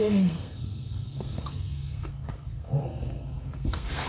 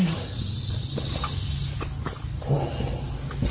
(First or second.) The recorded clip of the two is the second